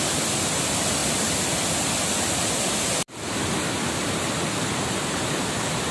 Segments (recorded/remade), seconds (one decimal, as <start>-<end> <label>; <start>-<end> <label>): 0.0-5.9 recorded